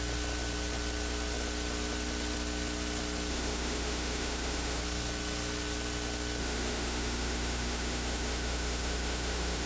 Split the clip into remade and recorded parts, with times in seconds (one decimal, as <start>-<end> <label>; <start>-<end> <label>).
0.0-3.3 recorded; 3.3-4.8 remade; 4.8-6.4 recorded; 6.4-9.7 remade